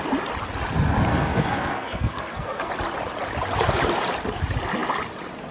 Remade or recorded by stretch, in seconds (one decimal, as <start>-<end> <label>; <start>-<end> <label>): 0.0-1.1 recorded; 1.1-2.7 remade; 2.7-5.5 recorded